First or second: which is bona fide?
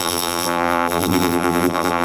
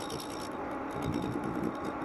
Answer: second